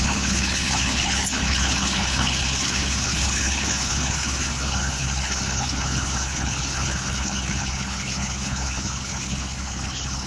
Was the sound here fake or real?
fake